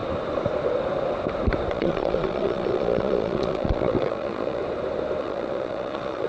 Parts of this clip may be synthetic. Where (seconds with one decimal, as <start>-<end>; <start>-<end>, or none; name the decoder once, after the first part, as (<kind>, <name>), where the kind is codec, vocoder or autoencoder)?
1.7-4.6 (vocoder, Vocos); 5.2-6.3